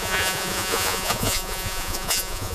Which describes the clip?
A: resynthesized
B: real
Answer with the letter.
A